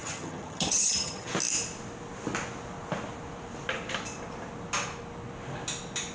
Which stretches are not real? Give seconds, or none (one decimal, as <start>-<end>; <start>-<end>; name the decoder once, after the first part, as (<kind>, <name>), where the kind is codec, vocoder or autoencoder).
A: 0.0-1.3 (vocoder, HiFi-GAN)